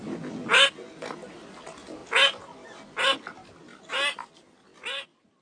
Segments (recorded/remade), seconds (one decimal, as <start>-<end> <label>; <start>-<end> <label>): 0.0-5.4 recorded